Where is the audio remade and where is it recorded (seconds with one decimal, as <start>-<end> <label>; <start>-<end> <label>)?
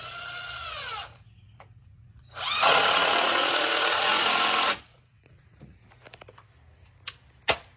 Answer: 0.0-1.1 recorded; 1.1-5.8 remade; 5.8-7.8 recorded